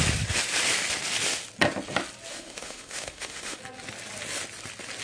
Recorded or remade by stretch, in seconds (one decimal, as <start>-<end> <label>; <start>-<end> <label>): 0.0-2.3 recorded; 2.3-3.6 remade; 3.6-5.0 recorded